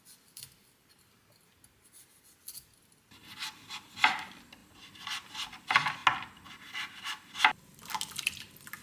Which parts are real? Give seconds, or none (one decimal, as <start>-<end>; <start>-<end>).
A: 0.0-8.8